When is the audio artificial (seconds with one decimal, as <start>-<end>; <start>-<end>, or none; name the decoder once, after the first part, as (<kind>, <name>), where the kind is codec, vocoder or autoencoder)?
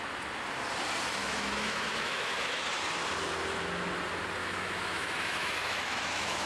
1.2-2.6 (autoencoder, DAC-VAE); 4.4-6.5